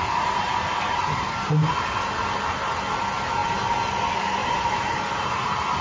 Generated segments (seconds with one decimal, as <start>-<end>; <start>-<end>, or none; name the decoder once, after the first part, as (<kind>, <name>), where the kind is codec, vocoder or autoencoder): 0.0-1.7 (vocoder, BigVGAN v2); 4.4-5.8